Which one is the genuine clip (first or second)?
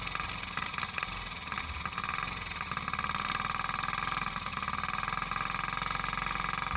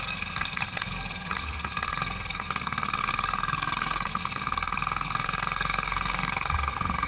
first